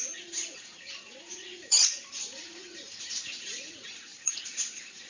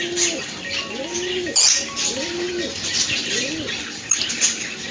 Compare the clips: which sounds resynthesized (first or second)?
first